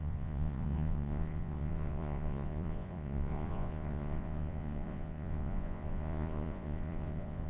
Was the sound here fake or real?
fake